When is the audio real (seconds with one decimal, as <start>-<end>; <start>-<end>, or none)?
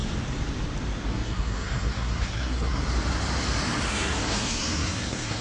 0.0-1.1; 2.8-3.9